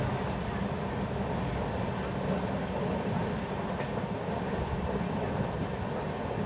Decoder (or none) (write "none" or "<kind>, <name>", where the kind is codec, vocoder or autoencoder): none